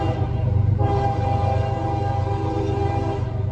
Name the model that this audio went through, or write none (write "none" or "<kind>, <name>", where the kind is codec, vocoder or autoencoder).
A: vocoder, BigVGAN v2